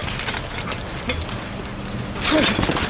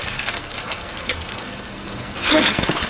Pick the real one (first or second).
first